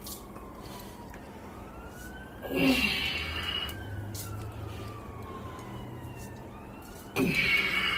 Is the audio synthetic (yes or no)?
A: no